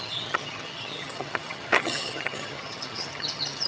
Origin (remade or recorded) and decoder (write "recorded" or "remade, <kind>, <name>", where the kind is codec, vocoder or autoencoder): remade, vocoder, HiFi-GAN